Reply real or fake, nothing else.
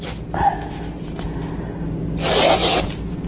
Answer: real